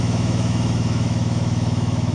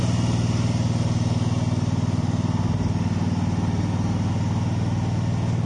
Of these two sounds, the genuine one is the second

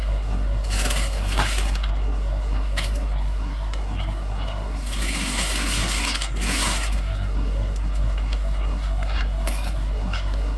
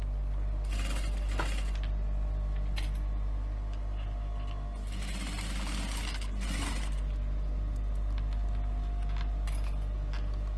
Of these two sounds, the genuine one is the second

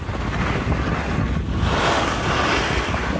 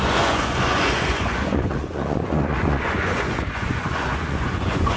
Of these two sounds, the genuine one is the first